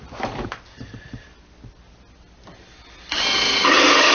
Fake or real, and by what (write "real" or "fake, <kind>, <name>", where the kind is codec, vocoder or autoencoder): real